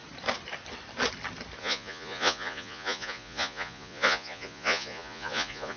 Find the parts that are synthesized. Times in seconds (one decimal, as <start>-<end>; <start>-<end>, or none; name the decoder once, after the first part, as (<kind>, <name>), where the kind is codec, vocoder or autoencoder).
1.6-5.8 (vocoder, Vocos)